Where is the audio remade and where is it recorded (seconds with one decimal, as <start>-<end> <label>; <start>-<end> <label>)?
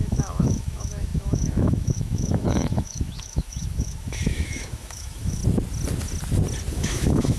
0.0-5.4 remade; 5.4-6.7 recorded; 6.7-7.4 remade